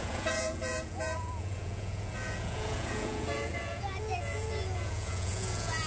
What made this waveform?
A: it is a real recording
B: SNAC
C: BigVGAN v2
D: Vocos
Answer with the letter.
D